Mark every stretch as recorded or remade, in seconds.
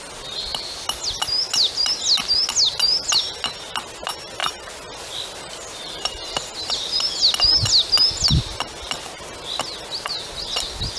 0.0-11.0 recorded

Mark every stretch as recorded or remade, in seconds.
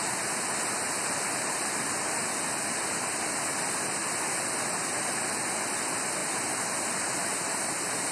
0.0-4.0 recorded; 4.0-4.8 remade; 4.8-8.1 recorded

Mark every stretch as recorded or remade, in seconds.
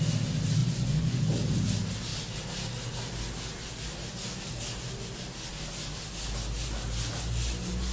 0.0-0.6 recorded; 0.6-1.2 remade; 1.2-7.9 recorded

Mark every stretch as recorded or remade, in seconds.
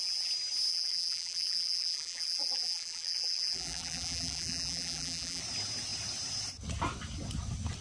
0.0-0.7 recorded; 0.7-5.4 remade; 5.4-7.8 recorded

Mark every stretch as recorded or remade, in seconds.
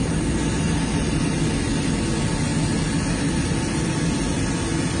0.0-1.4 remade; 1.4-5.0 recorded